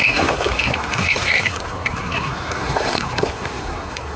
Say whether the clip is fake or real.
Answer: fake